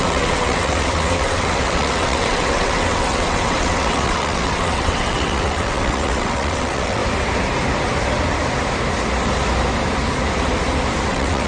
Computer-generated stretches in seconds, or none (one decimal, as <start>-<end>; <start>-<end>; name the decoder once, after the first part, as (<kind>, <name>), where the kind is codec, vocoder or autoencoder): 0.0-7.0 (vocoder, WaveNeXt); 11.1-11.5